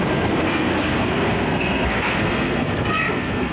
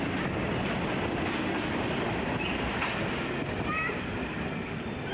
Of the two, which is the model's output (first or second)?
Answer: first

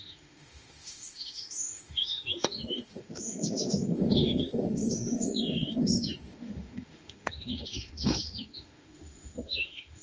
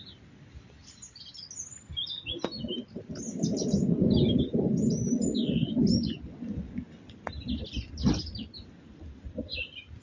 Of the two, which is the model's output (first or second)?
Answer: first